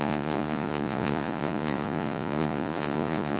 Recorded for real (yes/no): no